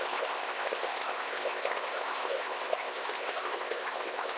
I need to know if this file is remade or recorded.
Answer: remade